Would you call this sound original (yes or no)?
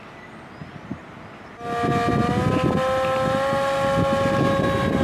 yes